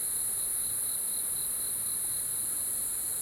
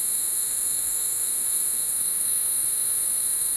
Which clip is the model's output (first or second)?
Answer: second